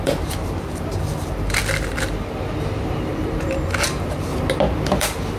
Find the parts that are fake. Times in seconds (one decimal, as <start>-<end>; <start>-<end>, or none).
0.0-1.6; 2.6-4.3; 5.0-5.4